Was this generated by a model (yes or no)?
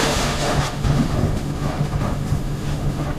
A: yes